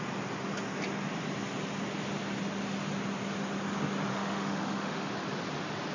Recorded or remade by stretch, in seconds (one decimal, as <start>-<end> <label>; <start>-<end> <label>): 0.0-4.1 recorded; 4.1-5.1 remade; 5.1-5.9 recorded